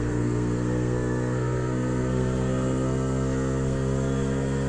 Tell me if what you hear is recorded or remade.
remade